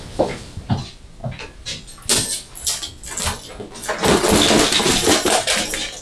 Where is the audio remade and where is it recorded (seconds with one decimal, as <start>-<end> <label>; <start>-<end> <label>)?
0.0-1.2 remade; 1.2-4.8 recorded; 4.8-6.0 remade